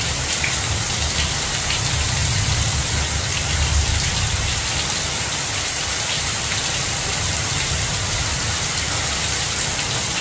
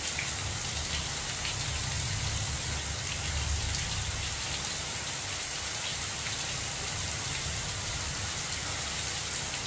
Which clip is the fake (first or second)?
first